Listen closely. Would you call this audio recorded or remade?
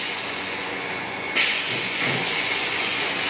remade